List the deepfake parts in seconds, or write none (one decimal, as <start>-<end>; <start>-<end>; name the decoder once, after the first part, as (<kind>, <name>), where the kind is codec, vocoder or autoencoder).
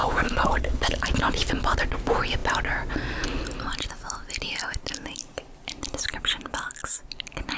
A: 0.0-1.0 (codec, HILCodec)